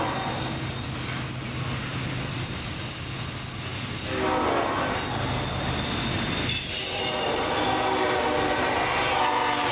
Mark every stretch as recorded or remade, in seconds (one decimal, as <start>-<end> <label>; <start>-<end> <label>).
0.0-9.7 recorded